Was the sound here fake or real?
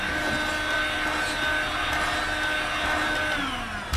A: real